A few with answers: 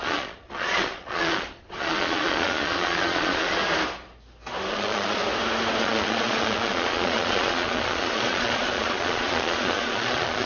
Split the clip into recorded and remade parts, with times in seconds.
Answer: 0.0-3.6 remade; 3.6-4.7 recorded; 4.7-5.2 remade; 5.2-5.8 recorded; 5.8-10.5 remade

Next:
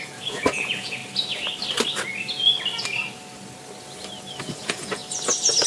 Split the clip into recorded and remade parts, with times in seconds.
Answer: 0.0-1.0 remade; 1.0-4.4 recorded; 4.4-5.0 remade; 5.0-5.7 recorded

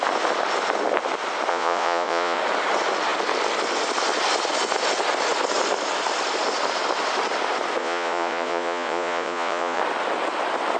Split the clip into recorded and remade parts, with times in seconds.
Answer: 0.0-1.5 recorded; 1.5-2.4 remade; 2.4-7.8 recorded; 7.8-9.8 remade; 9.8-10.8 recorded

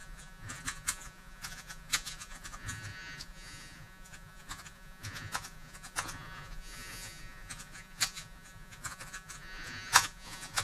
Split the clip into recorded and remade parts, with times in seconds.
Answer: 0.0-10.6 remade

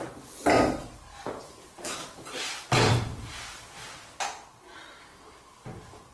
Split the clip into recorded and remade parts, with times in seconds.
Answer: 0.0-6.1 recorded

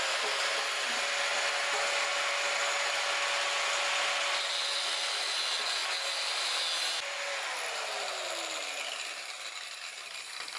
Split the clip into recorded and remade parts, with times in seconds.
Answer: 0.0-10.6 recorded

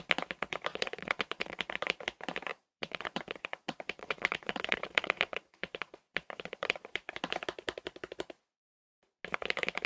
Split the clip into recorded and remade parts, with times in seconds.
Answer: 0.0-0.7 recorded; 0.7-1.6 remade; 1.6-2.5 recorded; 2.5-7.1 remade; 7.1-9.9 recorded